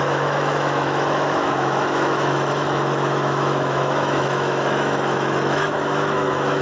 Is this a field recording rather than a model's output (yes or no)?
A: no